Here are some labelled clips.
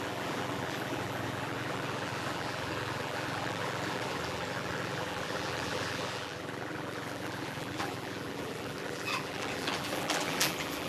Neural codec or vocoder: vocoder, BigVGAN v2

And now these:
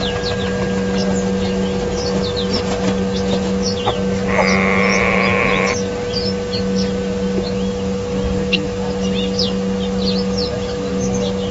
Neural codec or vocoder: none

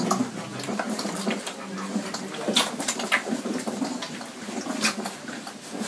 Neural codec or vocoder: none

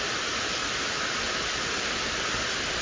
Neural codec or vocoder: none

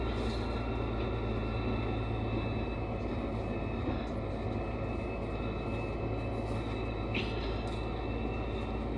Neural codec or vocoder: none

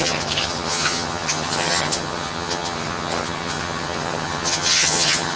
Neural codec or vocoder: vocoder, HiFi-GAN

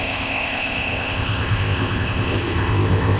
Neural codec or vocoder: codec, ZipCodec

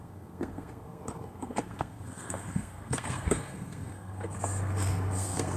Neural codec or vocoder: codec, SNAC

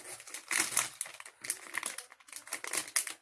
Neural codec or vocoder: none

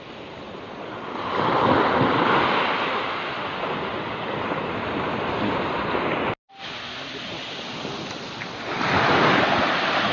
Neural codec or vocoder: none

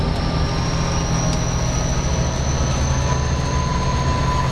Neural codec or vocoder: none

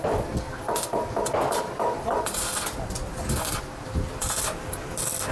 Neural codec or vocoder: none